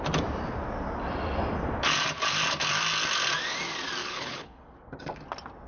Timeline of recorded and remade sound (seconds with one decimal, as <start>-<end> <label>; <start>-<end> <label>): 0.0-4.0 recorded; 4.0-4.6 remade; 4.6-5.7 recorded